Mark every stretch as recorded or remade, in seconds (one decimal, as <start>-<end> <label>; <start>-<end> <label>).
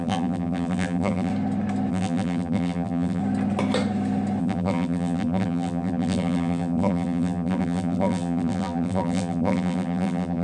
0.0-1.3 remade; 1.3-1.9 recorded; 1.9-3.2 remade; 3.2-4.4 recorded; 4.4-10.4 remade